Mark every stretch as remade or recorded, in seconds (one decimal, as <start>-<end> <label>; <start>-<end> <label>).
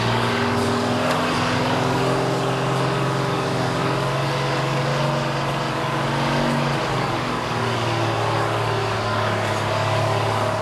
0.0-4.9 remade; 4.9-5.7 recorded; 5.7-10.6 remade